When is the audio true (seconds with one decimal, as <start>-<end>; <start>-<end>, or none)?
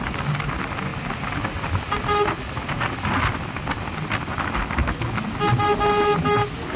0.0-6.8